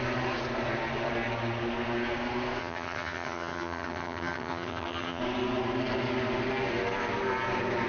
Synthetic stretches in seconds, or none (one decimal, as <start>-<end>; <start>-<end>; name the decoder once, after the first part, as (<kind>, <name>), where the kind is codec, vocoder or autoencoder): 2.6-5.2 (vocoder, HiFi-GAN)